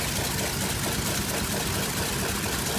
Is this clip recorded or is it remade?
recorded